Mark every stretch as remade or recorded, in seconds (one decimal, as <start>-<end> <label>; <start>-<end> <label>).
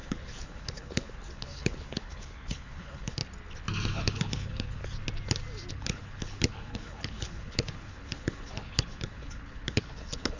0.0-3.2 remade; 3.2-3.9 recorded; 3.9-4.8 remade; 4.8-5.7 recorded; 5.7-10.4 remade